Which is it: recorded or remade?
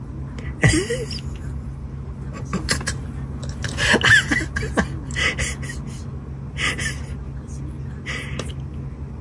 recorded